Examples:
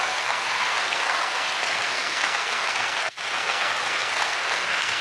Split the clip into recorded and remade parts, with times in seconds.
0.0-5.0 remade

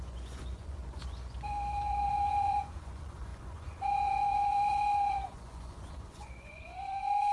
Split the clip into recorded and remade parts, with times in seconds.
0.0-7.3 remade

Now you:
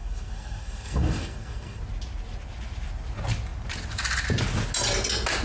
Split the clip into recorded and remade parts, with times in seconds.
0.0-1.8 remade; 1.8-5.4 recorded

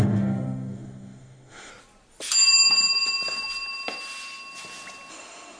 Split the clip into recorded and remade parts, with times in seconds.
0.0-1.7 remade; 1.7-5.1 recorded; 5.1-5.6 remade

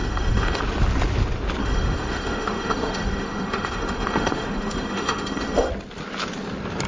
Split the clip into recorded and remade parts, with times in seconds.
0.0-0.6 remade; 0.6-1.6 recorded; 1.6-5.7 remade; 5.7-6.9 recorded